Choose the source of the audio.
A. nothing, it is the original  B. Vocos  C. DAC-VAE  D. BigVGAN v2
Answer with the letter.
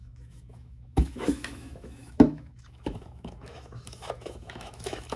C